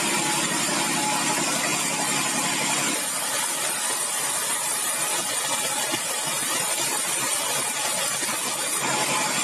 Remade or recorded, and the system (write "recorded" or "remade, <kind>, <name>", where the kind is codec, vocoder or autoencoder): recorded